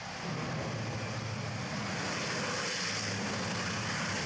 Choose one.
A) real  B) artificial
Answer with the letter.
A